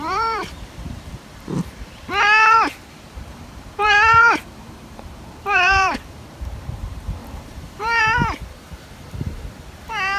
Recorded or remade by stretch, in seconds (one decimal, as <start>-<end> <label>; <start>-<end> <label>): 0.0-10.2 remade